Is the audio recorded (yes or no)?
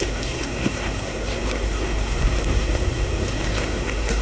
no